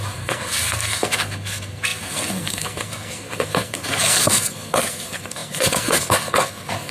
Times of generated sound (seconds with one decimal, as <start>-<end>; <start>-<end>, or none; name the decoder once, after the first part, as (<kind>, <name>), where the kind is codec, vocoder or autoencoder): 0.0-6.9 (codec, SNAC)